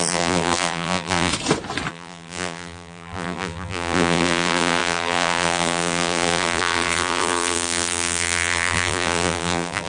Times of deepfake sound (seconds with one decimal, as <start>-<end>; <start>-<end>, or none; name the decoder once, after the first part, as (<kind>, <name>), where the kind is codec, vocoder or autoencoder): 0.0-1.3 (vocoder, BigVGAN v2); 1.9-9.9